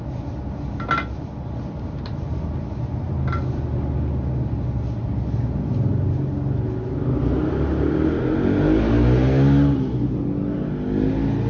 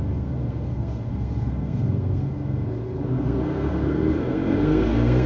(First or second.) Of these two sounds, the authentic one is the first